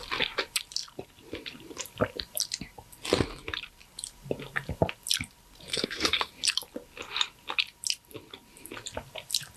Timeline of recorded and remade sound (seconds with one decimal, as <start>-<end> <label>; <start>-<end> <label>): 0.0-5.7 recorded; 5.7-6.3 remade; 6.3-9.6 recorded